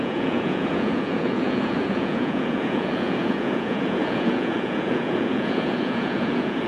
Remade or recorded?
remade